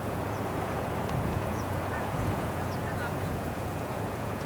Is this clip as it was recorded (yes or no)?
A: no